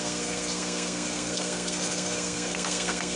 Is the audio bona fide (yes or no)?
no